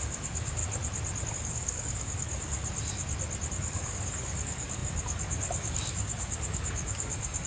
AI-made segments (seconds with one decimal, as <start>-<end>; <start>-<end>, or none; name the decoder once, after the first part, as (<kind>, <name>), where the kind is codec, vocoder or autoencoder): 0.0-0.6 (codec, DAC); 1.3-2.6; 3.5-7.5